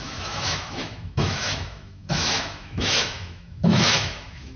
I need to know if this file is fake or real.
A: fake